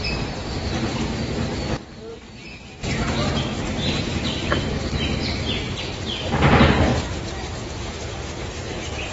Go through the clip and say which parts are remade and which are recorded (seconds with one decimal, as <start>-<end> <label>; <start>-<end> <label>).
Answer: 0.0-3.5 recorded; 3.5-6.3 remade; 6.3-6.9 recorded; 6.9-9.1 remade